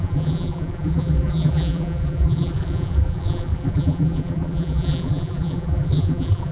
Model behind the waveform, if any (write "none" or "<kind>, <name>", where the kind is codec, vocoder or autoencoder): vocoder, BigVGAN v2